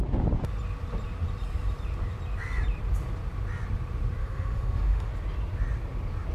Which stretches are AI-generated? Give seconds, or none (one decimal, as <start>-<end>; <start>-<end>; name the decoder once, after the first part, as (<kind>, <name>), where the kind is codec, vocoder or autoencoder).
4.2-5.1 (autoencoder, DAC-VAE)

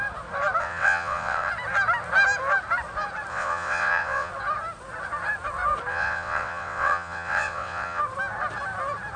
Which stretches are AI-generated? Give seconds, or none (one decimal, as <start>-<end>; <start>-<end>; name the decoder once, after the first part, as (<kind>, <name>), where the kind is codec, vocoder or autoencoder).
0.6-1.5 (vocoder, WaveNeXt); 3.3-4.3; 5.9-8.0

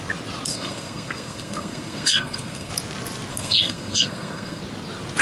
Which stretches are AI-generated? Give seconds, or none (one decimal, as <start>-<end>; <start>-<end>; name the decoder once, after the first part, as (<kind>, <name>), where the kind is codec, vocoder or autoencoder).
0.5-2.7 (codec, SNAC); 3.3-4.6

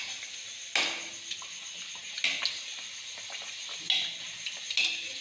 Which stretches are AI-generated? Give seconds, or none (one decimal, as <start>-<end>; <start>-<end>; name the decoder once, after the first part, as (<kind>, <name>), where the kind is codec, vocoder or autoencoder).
none

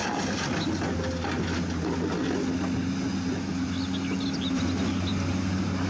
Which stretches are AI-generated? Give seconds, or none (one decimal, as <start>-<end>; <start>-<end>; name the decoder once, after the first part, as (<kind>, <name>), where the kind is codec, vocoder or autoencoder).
none

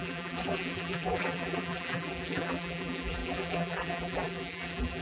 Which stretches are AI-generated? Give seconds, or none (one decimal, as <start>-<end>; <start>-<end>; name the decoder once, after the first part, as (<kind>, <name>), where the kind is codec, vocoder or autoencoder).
0.0-5.0 (vocoder, BigVGAN v2)

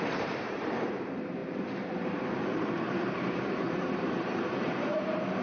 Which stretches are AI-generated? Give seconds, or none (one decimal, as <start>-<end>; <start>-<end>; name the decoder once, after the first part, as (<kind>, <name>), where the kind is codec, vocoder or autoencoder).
0.0-5.4 (vocoder, BigVGAN v2)